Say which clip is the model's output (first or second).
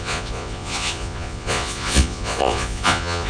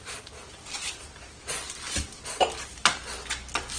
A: first